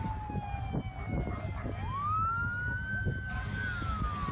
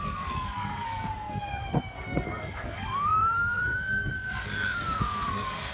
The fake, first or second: second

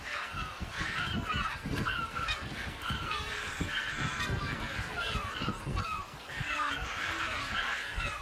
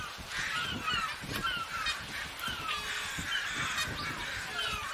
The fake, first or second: first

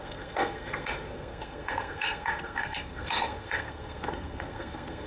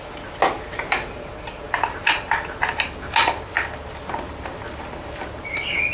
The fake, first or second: first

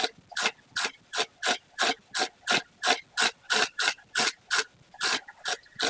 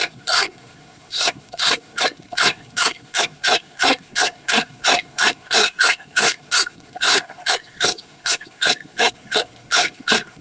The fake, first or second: second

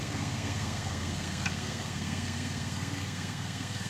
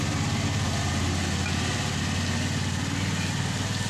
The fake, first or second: first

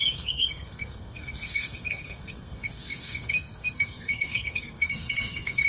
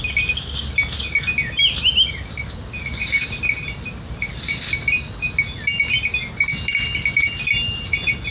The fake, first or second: first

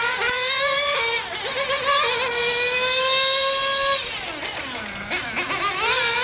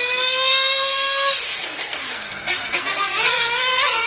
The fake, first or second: second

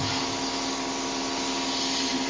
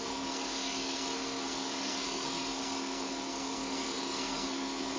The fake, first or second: second